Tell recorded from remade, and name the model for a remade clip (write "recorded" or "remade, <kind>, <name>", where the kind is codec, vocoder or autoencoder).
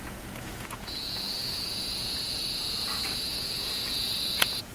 remade, vocoder, Vocos